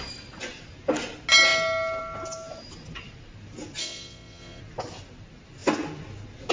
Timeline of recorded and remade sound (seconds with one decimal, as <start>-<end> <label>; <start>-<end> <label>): 0.0-3.8 recorded; 3.8-4.6 remade; 4.6-6.5 recorded